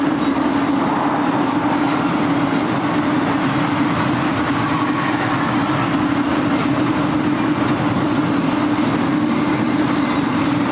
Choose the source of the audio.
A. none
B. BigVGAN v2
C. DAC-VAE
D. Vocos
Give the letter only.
A